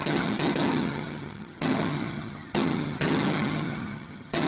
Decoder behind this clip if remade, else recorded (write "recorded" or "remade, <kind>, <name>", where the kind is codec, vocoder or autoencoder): remade, vocoder, HiFi-GAN